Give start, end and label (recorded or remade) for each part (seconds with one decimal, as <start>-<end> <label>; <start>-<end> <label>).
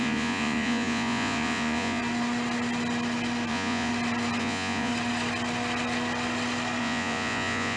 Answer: 0.0-2.0 remade; 2.0-3.5 recorded; 3.5-3.9 remade; 3.9-4.4 recorded; 4.4-4.9 remade; 4.9-6.8 recorded; 6.8-7.8 remade